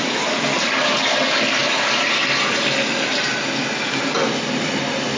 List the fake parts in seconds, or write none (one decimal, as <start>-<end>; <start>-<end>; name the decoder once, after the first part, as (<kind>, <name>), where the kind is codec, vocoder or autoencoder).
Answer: none